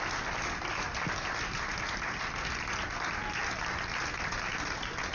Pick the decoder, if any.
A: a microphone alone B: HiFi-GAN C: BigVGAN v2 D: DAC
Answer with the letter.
A